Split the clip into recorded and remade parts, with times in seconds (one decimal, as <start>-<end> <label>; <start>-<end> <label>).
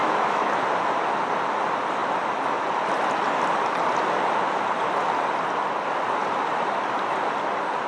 0.0-0.5 remade; 0.5-7.9 recorded